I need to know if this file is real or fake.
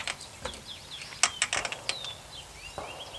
real